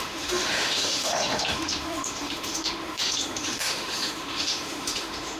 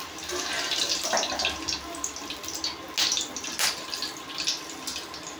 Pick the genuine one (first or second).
second